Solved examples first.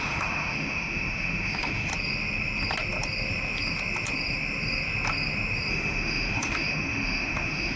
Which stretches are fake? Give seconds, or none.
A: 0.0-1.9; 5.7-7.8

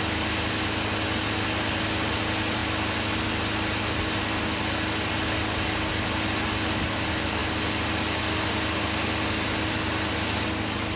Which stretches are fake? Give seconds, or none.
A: none

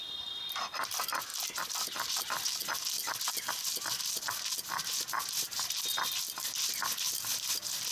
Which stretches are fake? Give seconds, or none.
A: none

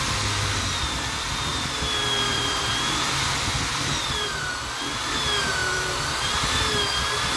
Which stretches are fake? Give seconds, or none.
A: 1.5-4.3; 5.6-6.3

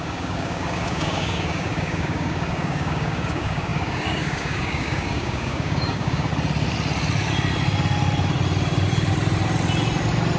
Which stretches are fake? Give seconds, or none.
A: 0.0-6.3

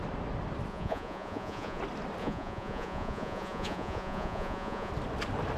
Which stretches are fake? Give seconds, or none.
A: 0.7-1.8; 2.2-4.9